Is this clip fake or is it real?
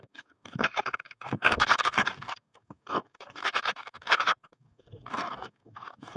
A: fake